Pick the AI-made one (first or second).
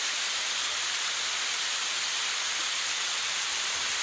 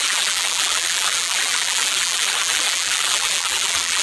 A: second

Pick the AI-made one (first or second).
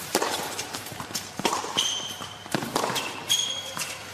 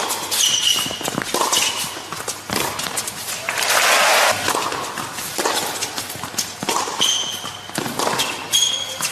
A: first